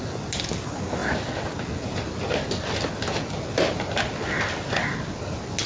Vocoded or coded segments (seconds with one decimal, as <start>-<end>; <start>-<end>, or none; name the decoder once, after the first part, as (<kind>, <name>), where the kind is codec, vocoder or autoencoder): none

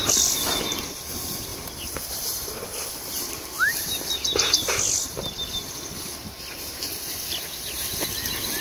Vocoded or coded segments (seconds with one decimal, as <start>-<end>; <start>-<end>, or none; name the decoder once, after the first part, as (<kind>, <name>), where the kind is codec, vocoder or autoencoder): none

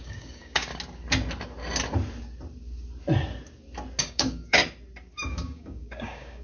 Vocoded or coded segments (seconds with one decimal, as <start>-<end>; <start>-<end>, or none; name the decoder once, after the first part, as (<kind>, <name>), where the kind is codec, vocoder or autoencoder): 0.0-0.7 (codec, DAC); 4.0-4.6; 5.2-6.4

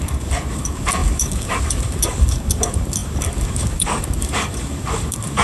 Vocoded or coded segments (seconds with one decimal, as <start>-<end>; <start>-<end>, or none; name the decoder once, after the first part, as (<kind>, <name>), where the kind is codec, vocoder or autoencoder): 0.0-5.4 (codec, DAC)

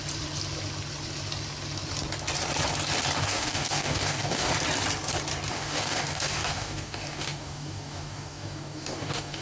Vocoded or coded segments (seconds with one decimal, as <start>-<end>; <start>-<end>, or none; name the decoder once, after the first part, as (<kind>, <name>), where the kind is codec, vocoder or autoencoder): 3.2-4.5 (codec, DAC); 5.5-9.4